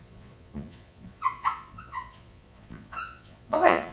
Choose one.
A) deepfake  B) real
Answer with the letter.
A